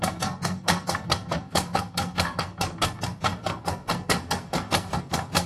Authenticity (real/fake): fake